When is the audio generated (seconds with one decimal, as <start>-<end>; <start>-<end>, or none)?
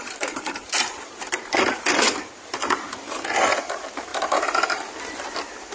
0.0-5.7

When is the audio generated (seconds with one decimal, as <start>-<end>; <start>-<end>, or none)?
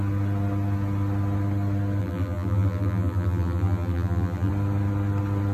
2.0-4.5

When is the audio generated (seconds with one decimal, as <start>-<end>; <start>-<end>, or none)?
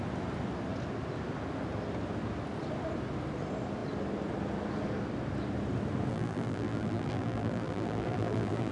6.1-8.7